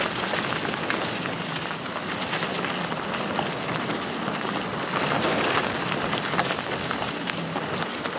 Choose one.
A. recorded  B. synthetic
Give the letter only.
A